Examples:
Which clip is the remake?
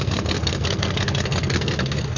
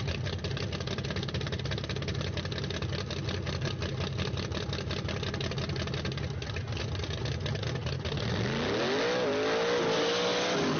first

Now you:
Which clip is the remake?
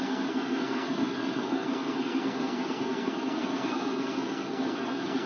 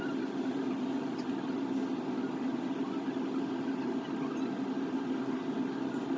first